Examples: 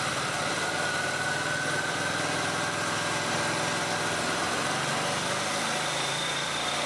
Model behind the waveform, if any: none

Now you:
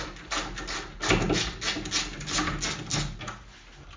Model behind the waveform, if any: none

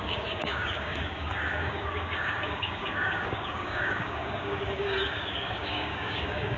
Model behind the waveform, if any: codec, DAC